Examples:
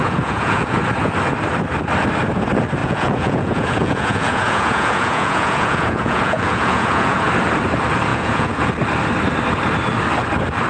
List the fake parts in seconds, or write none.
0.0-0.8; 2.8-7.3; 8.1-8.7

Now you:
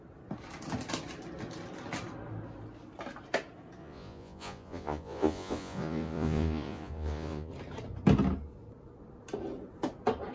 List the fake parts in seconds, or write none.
3.8-7.5

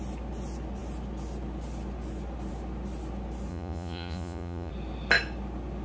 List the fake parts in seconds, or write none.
3.5-4.7

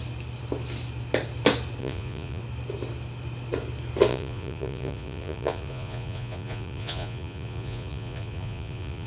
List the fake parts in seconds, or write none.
1.8-2.4; 4.1-9.1

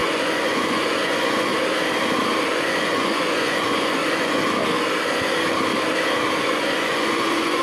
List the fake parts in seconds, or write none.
0.0-1.5; 2.5-4.4; 6.4-7.6